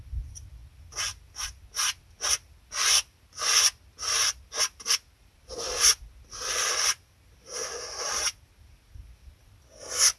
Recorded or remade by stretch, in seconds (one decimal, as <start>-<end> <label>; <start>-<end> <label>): 0.0-10.2 recorded